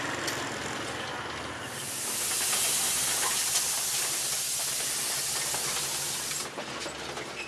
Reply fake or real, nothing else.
real